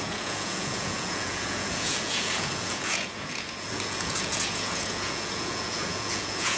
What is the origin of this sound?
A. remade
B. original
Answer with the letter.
A